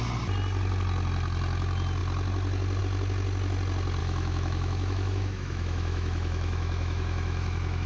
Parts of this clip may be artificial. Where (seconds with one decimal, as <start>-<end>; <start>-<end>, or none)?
4.0-7.9